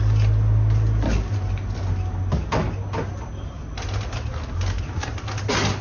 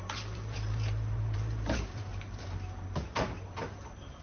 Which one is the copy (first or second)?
second